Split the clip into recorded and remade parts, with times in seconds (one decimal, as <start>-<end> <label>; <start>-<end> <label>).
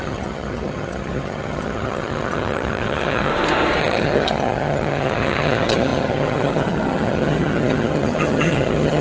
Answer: 0.0-3.3 remade; 3.3-3.8 recorded; 3.8-9.0 remade